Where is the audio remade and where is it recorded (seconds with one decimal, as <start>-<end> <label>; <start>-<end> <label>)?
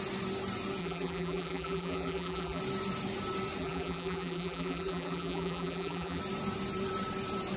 0.0-0.8 recorded; 0.8-2.6 remade; 2.6-3.6 recorded; 3.6-6.2 remade; 6.2-7.6 recorded